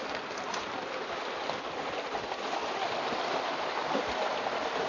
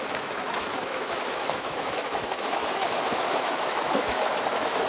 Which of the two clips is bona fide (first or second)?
first